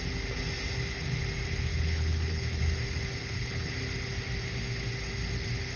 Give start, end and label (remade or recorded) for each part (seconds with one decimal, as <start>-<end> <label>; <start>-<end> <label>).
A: 0.0-1.7 recorded; 1.7-2.6 remade; 2.6-3.2 recorded; 3.2-3.7 remade; 3.7-5.8 recorded